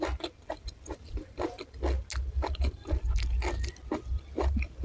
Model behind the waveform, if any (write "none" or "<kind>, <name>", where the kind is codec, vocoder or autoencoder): none